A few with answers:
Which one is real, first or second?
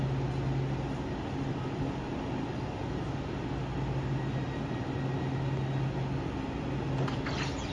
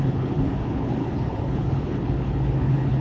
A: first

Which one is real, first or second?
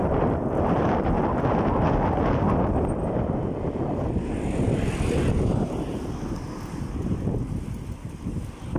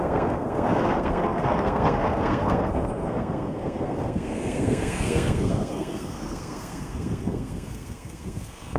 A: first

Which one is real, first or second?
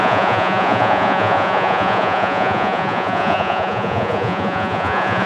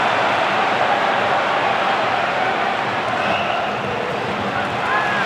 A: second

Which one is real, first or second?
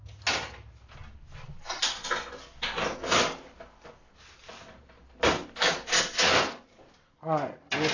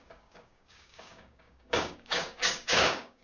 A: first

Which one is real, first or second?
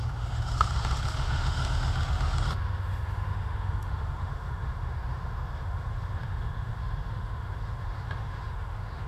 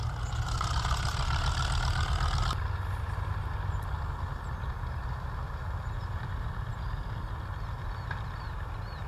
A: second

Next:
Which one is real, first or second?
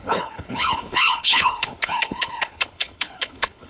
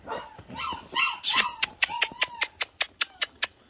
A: second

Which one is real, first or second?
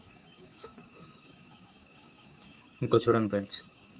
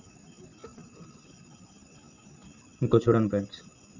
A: second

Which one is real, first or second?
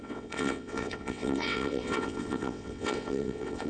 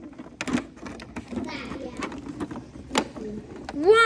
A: second